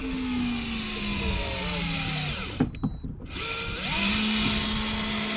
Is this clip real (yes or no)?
yes